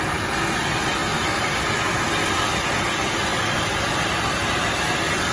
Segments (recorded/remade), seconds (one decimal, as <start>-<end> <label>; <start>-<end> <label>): 0.0-5.3 recorded